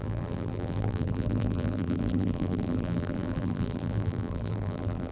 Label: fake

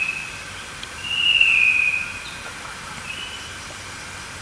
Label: real